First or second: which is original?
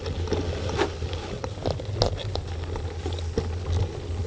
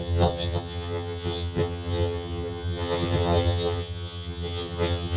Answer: first